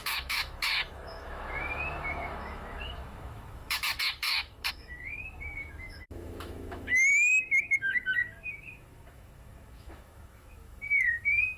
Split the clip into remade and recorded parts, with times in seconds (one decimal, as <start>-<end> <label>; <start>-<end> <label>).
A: 0.0-11.6 remade